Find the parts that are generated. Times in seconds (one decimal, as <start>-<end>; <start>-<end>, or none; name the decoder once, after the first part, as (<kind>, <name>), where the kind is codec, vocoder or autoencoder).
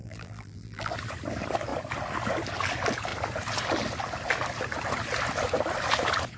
0.0-0.9 (vocoder, BigVGAN v2)